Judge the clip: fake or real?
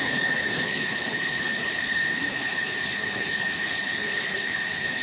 fake